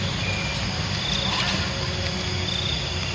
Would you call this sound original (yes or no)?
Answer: yes